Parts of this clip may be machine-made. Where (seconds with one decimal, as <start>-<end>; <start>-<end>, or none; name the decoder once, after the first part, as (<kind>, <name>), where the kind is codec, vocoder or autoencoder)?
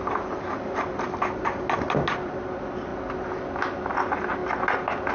none